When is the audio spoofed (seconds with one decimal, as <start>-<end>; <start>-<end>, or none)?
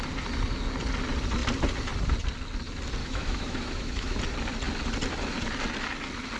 3.0-4.2